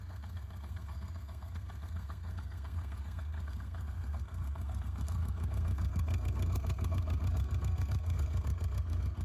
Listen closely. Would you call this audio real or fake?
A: fake